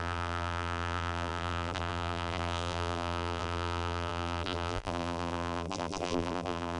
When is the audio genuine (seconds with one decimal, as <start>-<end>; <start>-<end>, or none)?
none